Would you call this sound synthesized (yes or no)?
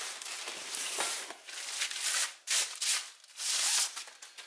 no